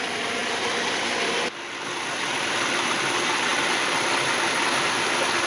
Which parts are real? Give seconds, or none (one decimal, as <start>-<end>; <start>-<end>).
0.0-5.5